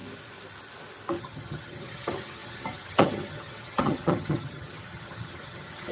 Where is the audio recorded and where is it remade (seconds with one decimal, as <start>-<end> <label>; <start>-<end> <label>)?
0.0-1.2 recorded; 1.2-5.9 remade